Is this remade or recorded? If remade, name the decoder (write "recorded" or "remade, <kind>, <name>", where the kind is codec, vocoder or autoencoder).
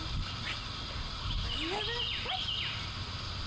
recorded